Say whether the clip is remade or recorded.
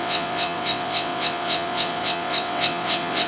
remade